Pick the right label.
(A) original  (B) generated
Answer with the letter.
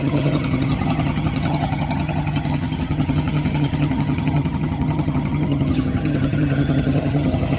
B